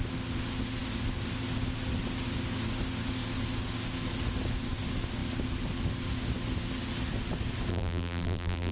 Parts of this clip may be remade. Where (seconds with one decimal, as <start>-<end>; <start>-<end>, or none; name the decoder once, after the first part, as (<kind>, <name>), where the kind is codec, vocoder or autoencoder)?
7.7-8.7 (vocoder, BigVGAN v2)